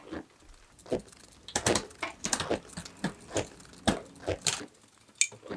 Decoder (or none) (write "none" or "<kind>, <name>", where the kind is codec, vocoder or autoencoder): none